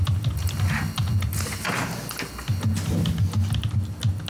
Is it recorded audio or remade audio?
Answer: recorded